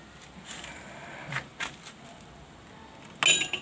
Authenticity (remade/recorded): recorded